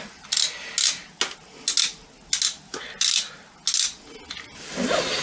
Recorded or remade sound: recorded